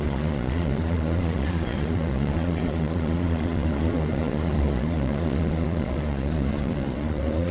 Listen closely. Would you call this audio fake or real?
fake